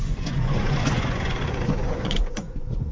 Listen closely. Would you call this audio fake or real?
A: fake